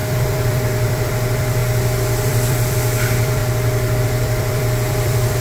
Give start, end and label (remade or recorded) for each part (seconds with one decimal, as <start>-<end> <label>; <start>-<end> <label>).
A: 0.0-1.6 remade; 1.6-2.2 recorded; 2.2-3.4 remade; 3.4-4.0 recorded; 4.0-5.4 remade